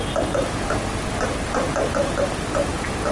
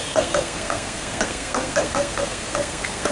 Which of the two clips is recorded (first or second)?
first